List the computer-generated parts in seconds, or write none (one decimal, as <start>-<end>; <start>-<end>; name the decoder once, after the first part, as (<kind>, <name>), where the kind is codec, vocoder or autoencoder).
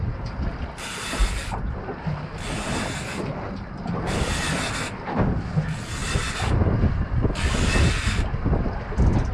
none